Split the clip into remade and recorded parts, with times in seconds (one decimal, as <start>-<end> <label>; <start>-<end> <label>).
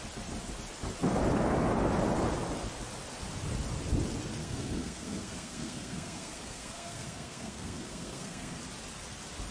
0.0-4.4 recorded; 4.4-8.6 remade; 8.6-9.5 recorded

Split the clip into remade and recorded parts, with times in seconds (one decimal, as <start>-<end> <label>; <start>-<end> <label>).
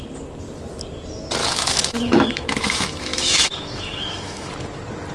0.0-1.4 recorded; 1.4-4.5 remade; 4.5-5.1 recorded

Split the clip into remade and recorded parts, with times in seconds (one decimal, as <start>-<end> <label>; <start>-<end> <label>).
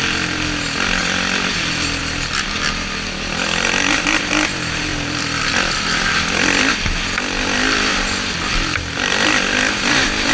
0.0-1.0 recorded; 1.0-2.0 remade; 2.0-4.9 recorded; 4.9-6.7 remade; 6.7-7.9 recorded; 7.9-10.3 remade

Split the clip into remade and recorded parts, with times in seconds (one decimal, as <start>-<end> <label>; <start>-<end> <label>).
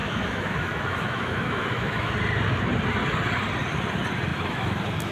0.0-2.1 remade; 2.1-4.3 recorded; 4.3-5.1 remade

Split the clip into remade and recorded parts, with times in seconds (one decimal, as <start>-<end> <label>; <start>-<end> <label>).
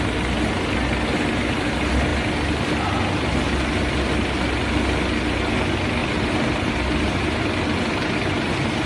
0.0-8.9 recorded